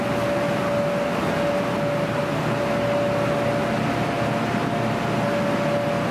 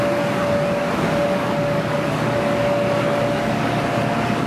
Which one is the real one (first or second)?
first